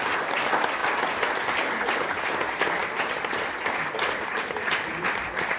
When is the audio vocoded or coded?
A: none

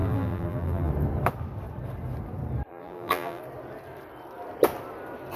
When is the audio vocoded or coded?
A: 0.0-0.9; 2.7-3.4

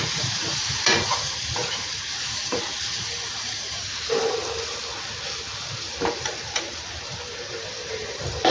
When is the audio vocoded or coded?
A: 0.0-4.4; 5.6-8.5